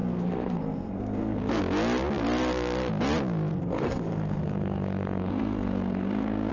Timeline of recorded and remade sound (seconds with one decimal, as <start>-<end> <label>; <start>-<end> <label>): 0.0-1.6 remade; 1.6-3.5 recorded; 3.5-6.5 remade